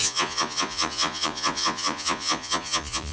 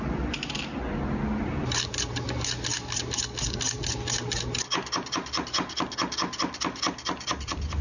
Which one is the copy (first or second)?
first